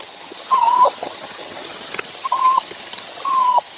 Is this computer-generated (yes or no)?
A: yes